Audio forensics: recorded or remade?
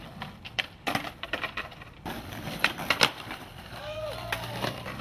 remade